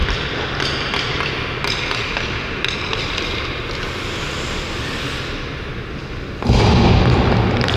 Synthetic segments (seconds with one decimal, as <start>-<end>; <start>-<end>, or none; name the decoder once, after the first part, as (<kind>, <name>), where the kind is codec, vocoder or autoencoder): none